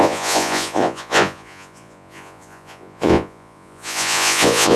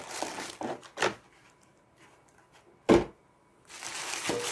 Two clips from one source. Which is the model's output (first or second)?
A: first